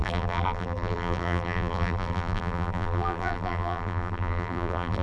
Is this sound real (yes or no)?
no